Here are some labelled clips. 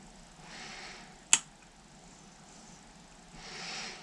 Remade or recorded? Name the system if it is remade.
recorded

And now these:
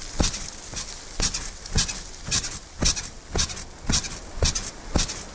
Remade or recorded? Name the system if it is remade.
recorded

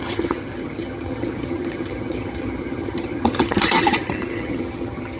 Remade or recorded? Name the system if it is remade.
remade, vocoder, HiFi-GAN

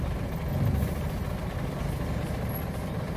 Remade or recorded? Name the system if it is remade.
recorded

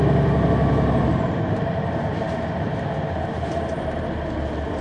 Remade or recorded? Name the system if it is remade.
recorded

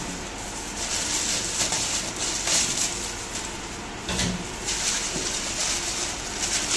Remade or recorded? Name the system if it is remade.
recorded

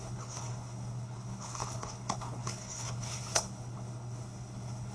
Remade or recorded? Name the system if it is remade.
remade, codec, HILCodec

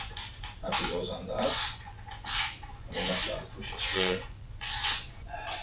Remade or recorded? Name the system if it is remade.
remade, vocoder, Vocos